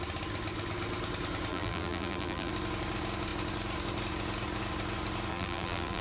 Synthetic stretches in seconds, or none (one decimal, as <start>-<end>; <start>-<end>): 1.5-2.5; 5.3-6.0